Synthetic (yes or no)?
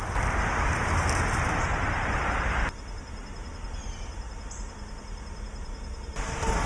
no